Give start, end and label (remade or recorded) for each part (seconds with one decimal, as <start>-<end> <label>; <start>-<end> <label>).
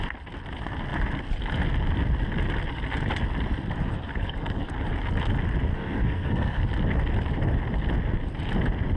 0.0-4.1 recorded; 4.1-4.7 remade; 4.7-5.7 recorded; 5.7-6.7 remade; 6.7-9.0 recorded